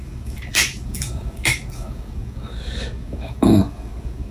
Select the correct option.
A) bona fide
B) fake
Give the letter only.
B